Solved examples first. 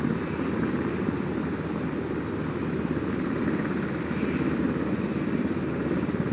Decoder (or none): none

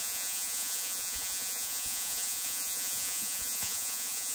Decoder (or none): vocoder, Vocos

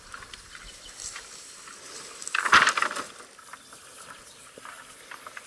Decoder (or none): vocoder, BigVGAN v2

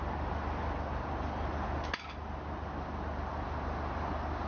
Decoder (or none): none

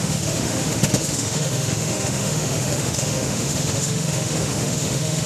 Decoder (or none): autoencoder, DAC-VAE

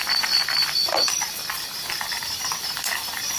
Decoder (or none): none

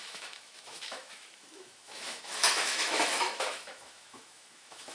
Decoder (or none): autoencoder, DAC-VAE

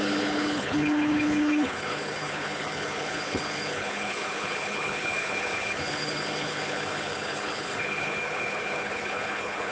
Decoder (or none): codec, HILCodec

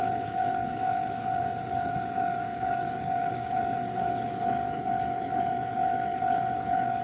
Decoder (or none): codec, HILCodec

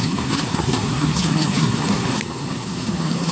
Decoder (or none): codec, SNAC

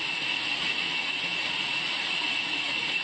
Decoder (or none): vocoder, Vocos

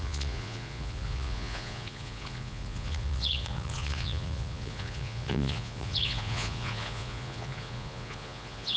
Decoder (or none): vocoder, Vocos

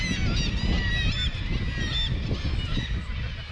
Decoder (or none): none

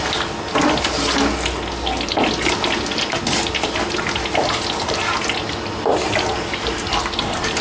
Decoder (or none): none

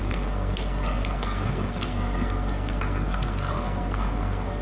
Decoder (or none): codec, SNAC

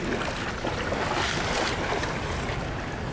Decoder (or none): none